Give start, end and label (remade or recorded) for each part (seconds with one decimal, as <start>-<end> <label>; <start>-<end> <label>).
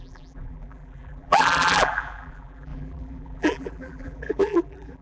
0.0-5.0 remade